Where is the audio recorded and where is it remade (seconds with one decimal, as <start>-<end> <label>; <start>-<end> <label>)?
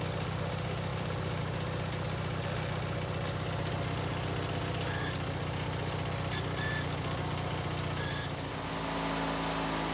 0.0-0.9 recorded; 0.9-1.4 remade; 1.4-9.9 recorded